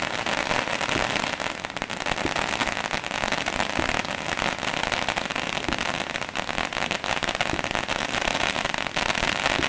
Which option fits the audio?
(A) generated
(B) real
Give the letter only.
B